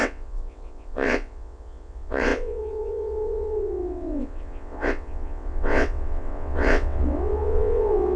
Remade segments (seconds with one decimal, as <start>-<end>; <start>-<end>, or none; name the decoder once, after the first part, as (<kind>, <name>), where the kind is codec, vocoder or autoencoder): 0.0-8.2 (vocoder, WaveNeXt)